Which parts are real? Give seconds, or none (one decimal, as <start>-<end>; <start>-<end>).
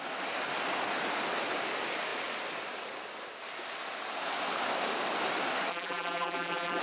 0.0-5.7